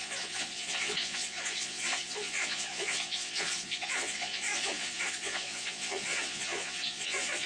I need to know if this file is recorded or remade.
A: remade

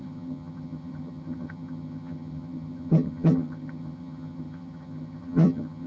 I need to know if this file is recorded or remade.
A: remade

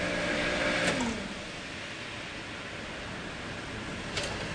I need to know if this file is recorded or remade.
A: recorded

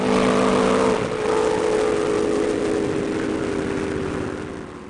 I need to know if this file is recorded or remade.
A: recorded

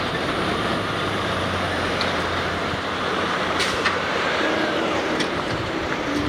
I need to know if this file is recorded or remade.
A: remade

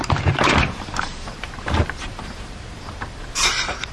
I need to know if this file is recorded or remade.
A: remade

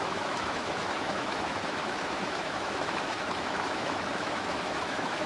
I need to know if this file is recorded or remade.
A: remade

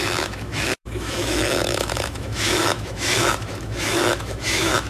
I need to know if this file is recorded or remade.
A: remade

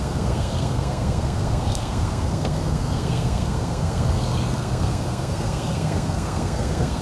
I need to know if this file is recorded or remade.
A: remade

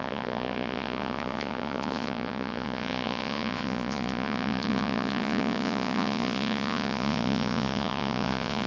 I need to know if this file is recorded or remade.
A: remade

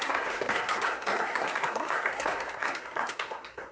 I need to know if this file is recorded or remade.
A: remade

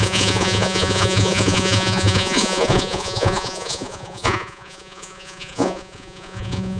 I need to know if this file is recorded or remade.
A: remade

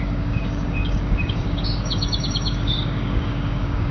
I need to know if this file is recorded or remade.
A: remade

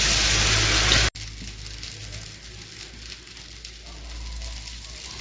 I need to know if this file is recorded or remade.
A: recorded